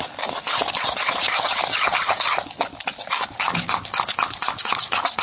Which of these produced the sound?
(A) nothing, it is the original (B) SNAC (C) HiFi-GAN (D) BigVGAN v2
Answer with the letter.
A